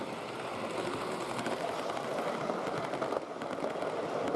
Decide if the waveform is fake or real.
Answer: real